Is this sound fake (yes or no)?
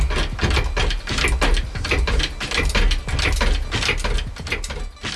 no